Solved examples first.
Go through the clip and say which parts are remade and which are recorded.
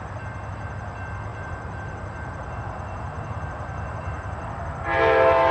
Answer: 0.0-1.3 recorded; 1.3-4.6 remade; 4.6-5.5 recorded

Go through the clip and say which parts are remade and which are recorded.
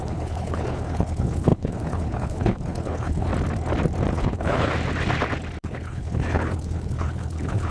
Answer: 0.0-3.3 remade; 3.3-4.1 recorded; 4.1-4.7 remade; 4.7-5.6 recorded; 5.6-7.7 remade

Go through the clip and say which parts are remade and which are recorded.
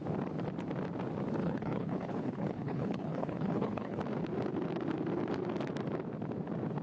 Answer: 0.0-1.4 recorded; 1.4-4.0 remade; 4.0-6.8 recorded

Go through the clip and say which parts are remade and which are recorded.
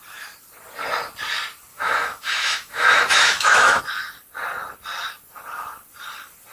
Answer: 0.0-1.7 recorded; 1.7-3.8 remade; 3.8-6.5 recorded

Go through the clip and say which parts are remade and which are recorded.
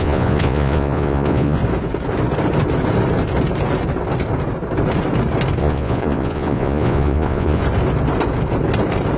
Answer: 0.0-1.6 remade; 1.6-5.6 recorded; 5.6-7.6 remade; 7.6-9.2 recorded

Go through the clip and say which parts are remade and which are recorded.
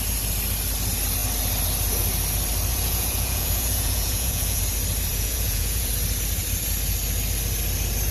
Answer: 0.0-2.7 recorded; 2.7-4.6 remade; 4.6-5.1 recorded; 5.1-5.9 remade; 5.9-8.1 recorded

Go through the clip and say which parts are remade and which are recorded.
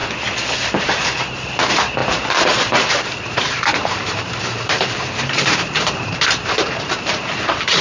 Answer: 0.0-0.8 recorded; 0.8-7.8 remade